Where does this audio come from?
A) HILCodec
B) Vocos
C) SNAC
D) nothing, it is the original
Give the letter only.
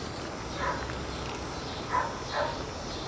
D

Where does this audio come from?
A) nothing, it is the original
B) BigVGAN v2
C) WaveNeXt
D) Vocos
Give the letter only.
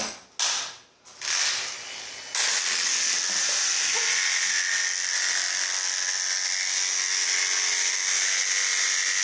A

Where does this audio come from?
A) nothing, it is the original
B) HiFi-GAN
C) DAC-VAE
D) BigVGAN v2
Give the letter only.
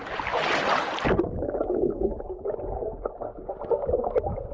A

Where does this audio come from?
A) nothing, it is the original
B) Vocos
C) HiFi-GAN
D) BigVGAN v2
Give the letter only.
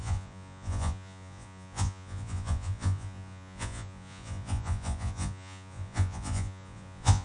B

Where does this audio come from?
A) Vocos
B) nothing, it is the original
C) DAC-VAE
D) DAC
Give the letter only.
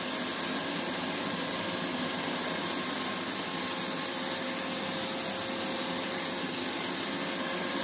B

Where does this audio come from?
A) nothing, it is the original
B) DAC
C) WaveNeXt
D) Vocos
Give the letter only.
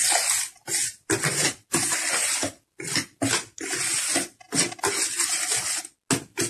A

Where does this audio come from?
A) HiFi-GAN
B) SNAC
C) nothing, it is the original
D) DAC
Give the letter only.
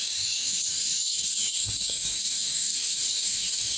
D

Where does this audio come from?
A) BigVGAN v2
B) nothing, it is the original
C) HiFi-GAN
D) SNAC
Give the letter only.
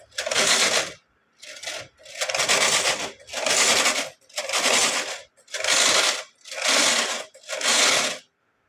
B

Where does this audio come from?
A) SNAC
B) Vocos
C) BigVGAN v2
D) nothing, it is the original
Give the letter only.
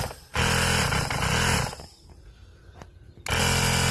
D